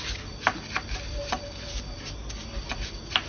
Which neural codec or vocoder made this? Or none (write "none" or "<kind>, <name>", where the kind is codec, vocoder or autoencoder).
none